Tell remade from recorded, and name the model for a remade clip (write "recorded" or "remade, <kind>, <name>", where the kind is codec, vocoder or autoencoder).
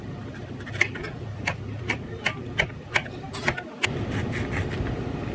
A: remade, vocoder, BigVGAN v2